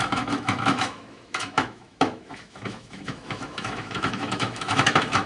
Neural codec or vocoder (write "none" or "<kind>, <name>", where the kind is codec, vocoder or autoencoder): autoencoder, DAC-VAE